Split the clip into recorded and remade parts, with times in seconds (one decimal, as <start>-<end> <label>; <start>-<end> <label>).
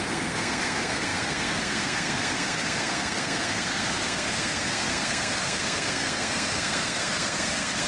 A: 0.0-7.9 remade